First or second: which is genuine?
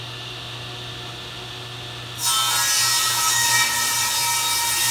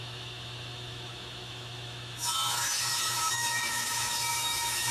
first